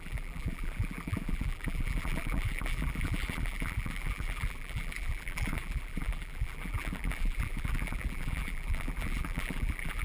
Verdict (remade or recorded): remade